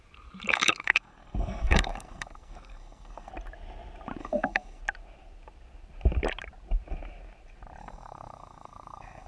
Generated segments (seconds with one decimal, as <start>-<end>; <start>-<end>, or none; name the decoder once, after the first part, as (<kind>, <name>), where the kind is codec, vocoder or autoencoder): 0.5-3.3 (codec, SNAC); 4.2-4.8; 7.8-9.3